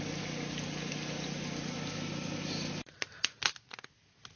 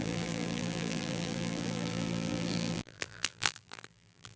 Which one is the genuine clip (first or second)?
first